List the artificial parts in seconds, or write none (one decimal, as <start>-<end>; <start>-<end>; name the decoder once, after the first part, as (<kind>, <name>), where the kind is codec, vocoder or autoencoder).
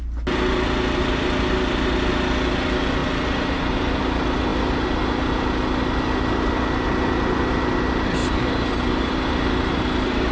3.0-3.8 (vocoder, BigVGAN v2); 8.2-10.3